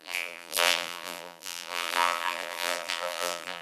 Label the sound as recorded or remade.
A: remade